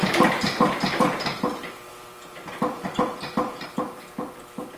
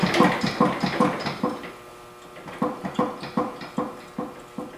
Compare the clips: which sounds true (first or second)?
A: second